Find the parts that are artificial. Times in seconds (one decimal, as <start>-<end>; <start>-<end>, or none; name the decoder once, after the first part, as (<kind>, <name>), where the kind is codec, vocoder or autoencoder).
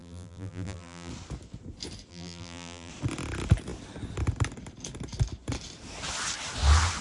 0.0-1.1 (vocoder, BigVGAN v2); 2.1-2.9